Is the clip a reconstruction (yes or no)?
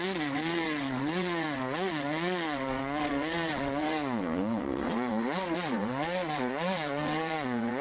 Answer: yes